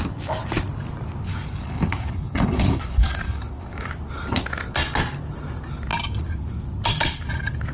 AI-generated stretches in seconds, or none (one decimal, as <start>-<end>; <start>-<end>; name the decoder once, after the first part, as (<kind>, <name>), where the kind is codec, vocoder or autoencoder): 1.3-3.9 (codec, DAC)